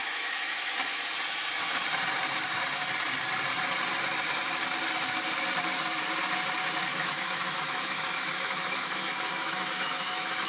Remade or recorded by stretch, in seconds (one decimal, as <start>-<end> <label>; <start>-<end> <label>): 0.0-1.1 remade; 1.1-6.9 recorded; 6.9-10.5 remade